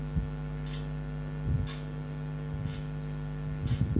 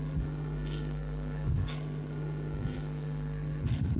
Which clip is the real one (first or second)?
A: first